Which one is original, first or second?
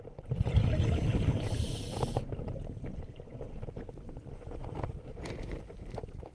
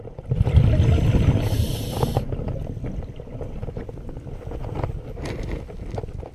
second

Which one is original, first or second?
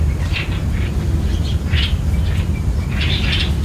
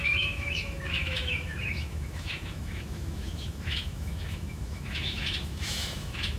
first